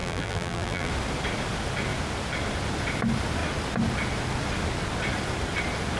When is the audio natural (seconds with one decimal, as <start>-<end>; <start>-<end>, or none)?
0.9-6.0